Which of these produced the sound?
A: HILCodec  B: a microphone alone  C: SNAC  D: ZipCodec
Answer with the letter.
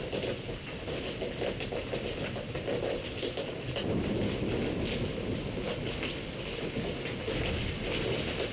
B